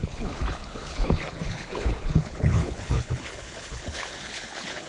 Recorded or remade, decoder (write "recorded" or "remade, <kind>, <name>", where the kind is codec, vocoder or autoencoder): remade, codec, HILCodec